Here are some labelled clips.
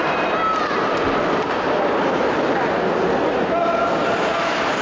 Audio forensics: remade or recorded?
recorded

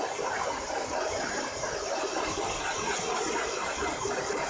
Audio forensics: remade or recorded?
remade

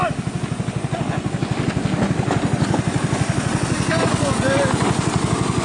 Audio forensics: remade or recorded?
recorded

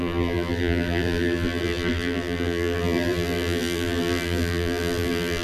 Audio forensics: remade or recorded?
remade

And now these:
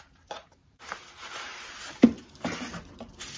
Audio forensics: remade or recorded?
remade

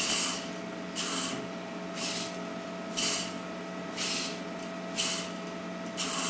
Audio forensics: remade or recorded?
recorded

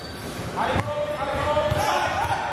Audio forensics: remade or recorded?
remade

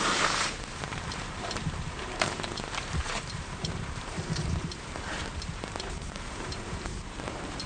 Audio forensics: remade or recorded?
remade